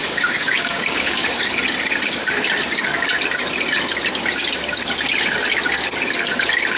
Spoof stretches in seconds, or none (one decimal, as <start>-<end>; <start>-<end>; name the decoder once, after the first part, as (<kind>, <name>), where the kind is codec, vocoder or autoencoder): 0.0-1.5 (codec, DAC)